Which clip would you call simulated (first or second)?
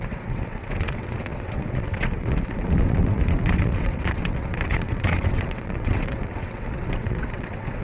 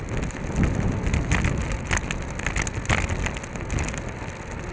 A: first